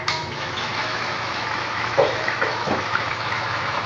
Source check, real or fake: fake